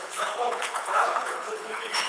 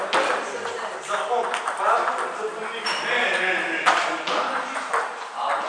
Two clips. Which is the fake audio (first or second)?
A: first